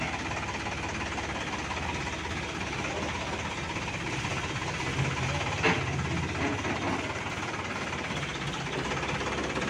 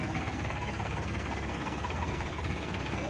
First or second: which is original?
first